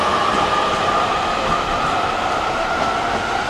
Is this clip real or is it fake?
fake